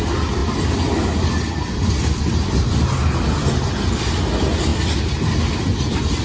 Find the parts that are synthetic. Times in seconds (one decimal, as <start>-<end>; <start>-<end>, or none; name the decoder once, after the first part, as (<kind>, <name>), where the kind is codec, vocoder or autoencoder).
none